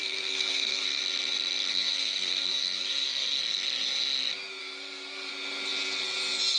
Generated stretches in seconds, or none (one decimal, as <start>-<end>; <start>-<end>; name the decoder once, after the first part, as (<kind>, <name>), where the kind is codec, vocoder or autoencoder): 0.0-1.0 (codec, SNAC); 1.7-3.4; 4.6-5.3